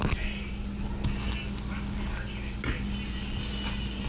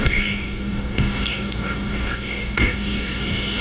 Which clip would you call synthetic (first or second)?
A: second